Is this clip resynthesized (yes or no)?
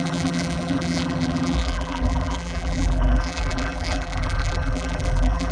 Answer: yes